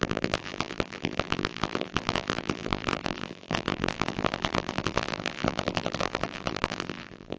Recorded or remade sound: remade